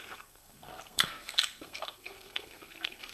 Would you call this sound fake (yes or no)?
yes